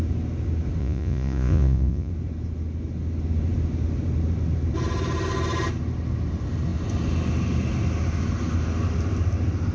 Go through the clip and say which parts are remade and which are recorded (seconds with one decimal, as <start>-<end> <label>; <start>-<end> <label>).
0.0-0.8 recorded; 0.8-2.1 remade; 2.1-9.7 recorded